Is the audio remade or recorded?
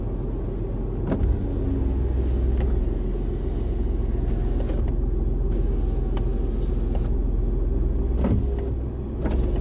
recorded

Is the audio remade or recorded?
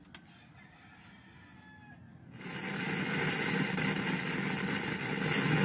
recorded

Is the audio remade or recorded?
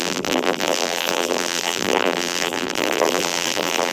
remade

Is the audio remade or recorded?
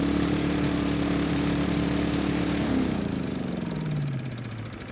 remade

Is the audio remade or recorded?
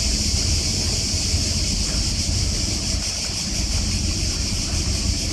remade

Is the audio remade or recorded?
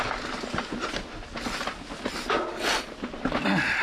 recorded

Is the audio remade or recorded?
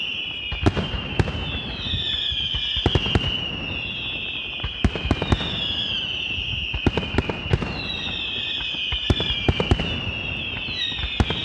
recorded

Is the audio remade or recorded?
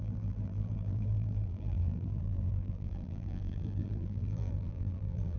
remade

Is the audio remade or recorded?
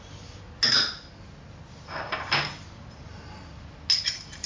recorded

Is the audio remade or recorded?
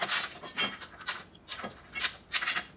recorded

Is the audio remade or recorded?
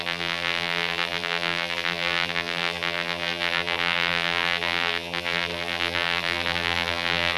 remade